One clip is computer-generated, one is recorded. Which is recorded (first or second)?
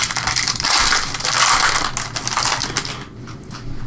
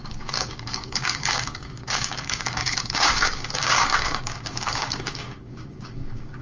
first